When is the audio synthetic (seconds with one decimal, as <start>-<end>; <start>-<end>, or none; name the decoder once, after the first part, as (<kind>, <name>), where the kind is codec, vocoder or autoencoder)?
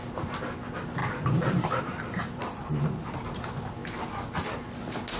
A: 1.0-3.2 (vocoder, BigVGAN v2)